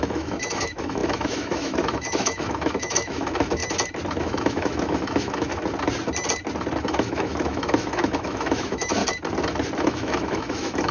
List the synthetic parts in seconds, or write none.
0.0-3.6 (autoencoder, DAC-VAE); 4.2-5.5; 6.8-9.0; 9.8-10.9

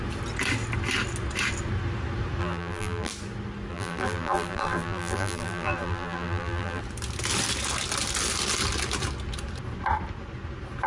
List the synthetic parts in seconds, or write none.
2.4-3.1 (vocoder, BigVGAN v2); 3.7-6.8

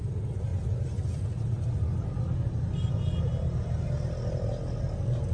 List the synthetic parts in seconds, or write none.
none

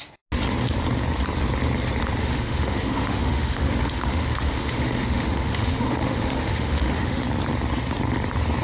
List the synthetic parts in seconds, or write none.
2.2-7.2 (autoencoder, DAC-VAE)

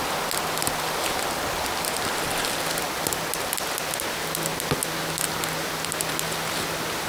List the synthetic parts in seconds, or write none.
none

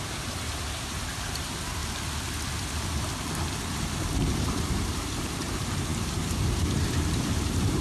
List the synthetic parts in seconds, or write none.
0.0-1.8 (vocoder, BigVGAN v2); 3.6-7.8

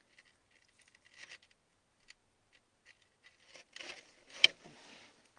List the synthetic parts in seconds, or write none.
none

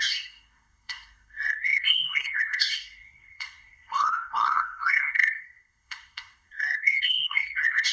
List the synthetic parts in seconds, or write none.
0.0-7.9 (codec, SNAC)